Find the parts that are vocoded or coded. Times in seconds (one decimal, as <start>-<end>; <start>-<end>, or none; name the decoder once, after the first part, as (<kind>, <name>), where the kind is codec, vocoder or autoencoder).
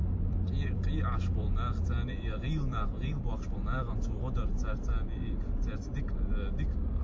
0.0-4.2 (vocoder, BigVGAN v2)